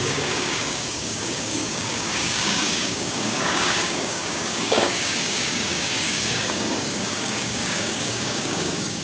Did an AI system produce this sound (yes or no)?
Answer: yes